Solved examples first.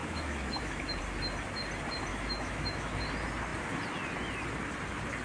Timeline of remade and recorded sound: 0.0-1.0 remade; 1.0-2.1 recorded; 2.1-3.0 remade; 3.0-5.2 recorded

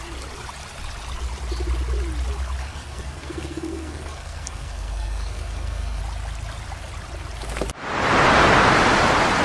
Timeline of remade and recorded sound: 0.0-2.6 recorded; 2.6-6.0 remade; 6.0-9.4 recorded

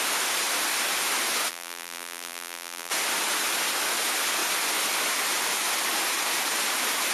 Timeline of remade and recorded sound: 0.0-1.5 recorded; 1.5-2.9 remade; 2.9-7.1 recorded

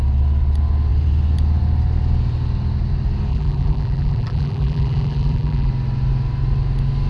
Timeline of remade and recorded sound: 0.0-3.3 recorded; 3.3-5.7 remade; 5.7-7.1 recorded

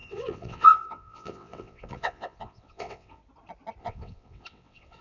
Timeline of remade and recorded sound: 0.0-3.2 remade; 3.2-3.8 recorded; 3.8-5.0 remade

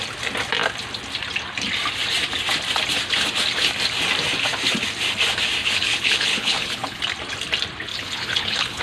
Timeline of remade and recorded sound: 0.0-5.6 recorded; 5.6-7.0 remade; 7.0-7.9 recorded; 7.9-8.8 remade

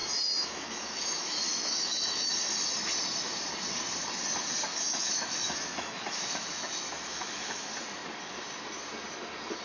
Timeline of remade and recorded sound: 0.0-2.3 remade; 2.3-4.7 recorded; 4.7-7.7 remade; 7.7-9.6 recorded

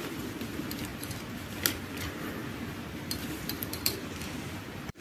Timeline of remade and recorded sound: 0.0-0.9 remade; 0.9-2.0 recorded; 2.0-2.4 remade; 2.4-3.1 recorded; 3.1-5.0 remade